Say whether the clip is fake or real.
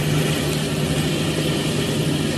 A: real